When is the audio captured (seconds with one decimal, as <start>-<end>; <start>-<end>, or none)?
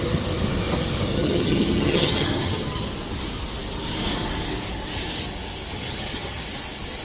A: 0.0-1.1; 2.9-5.7; 6.4-7.0